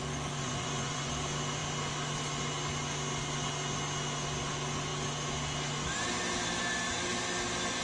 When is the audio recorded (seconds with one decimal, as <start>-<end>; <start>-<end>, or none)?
0.0-0.4; 1.1-7.8